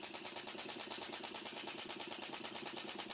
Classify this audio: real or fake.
real